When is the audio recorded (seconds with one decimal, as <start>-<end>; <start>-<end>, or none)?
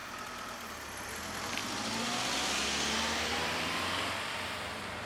0.0-5.1